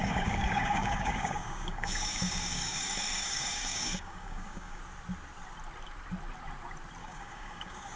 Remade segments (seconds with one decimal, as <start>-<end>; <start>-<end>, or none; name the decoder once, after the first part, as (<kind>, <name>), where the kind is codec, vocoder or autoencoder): 0.0-4.8 (codec, DAC); 7.0-8.0